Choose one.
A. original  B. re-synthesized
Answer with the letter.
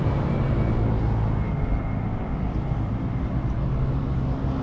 A